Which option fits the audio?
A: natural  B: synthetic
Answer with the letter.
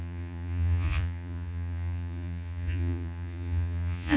B